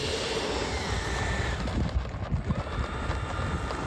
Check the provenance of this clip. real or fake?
real